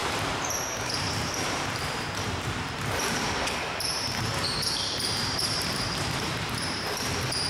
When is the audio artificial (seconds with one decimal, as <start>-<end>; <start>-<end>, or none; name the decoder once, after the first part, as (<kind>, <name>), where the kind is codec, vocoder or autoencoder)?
0.5-7.5 (vocoder, BigVGAN v2)